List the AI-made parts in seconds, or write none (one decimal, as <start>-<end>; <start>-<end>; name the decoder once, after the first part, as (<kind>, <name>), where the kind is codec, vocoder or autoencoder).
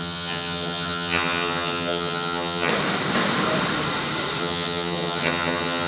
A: 0.0-2.7 (vocoder, HiFi-GAN); 4.4-5.9